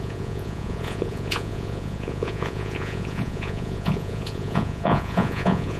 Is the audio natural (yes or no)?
no